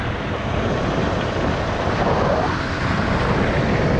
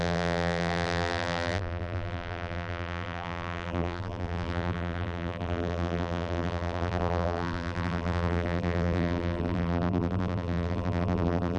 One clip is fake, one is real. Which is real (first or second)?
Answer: first